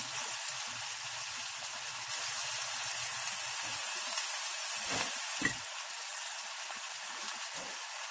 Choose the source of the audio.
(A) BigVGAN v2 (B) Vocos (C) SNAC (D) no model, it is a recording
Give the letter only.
D